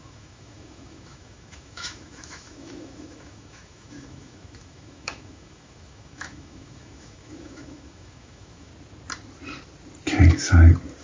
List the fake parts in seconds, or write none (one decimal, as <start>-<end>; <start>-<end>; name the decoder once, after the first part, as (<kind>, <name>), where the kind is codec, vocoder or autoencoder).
0.0-8.7 (autoencoder, DAC-VAE)